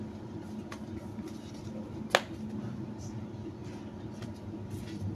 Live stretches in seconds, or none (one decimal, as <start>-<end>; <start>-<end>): 0.0-5.2